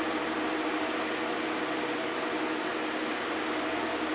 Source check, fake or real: real